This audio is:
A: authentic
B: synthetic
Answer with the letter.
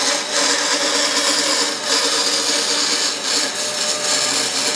A